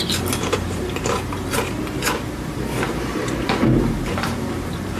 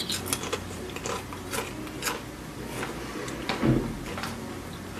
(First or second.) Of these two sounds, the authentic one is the second